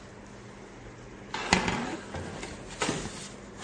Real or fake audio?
real